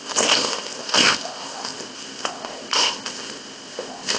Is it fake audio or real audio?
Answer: fake